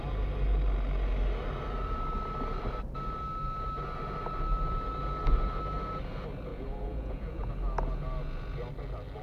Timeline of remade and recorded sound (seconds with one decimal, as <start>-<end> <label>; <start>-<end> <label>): 0.0-6.5 recorded; 6.5-7.5 remade; 7.5-9.2 recorded